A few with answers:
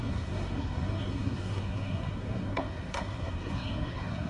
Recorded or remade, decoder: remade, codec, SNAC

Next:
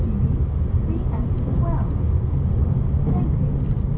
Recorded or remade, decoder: recorded